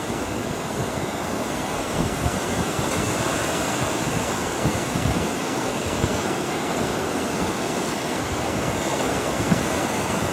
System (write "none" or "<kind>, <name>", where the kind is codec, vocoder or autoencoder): codec, SNAC